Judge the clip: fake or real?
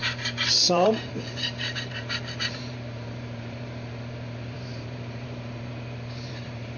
fake